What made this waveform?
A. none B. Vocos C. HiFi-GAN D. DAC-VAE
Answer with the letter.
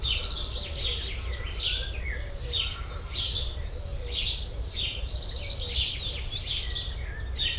A